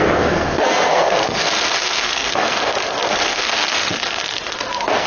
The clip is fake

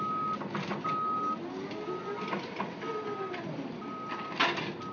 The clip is real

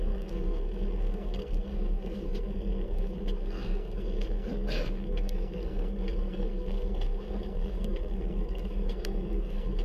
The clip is fake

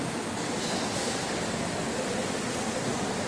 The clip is real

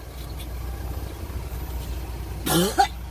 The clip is real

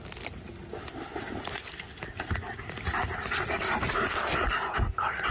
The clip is real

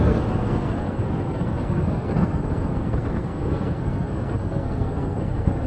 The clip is fake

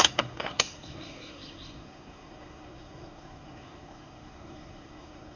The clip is fake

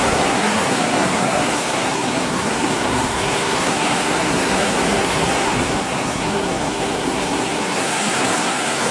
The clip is fake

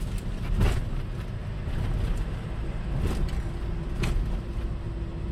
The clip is real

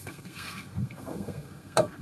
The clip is fake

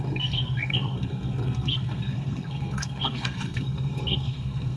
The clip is fake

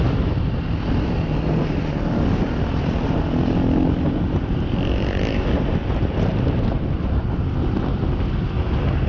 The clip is real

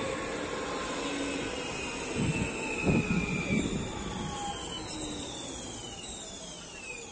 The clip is real